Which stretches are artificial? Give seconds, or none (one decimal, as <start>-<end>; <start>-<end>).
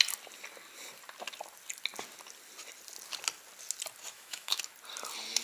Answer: 4.1-4.6